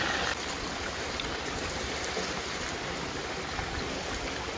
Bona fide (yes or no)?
yes